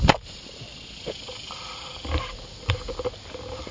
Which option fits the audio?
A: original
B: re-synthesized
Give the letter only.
A